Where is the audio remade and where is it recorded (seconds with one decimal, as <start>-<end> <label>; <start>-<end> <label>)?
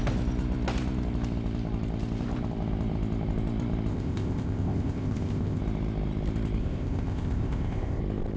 0.0-3.9 recorded; 3.9-5.6 remade; 5.6-6.6 recorded; 6.6-8.0 remade; 8.0-8.4 recorded